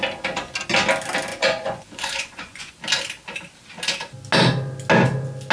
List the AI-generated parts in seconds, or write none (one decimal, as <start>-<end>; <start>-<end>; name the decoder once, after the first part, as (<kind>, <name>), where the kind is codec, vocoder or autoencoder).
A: 1.3-2.7 (vocoder, Vocos)